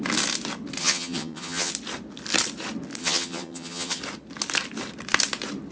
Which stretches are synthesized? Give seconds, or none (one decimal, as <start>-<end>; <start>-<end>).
0.8-1.7; 3.0-4.0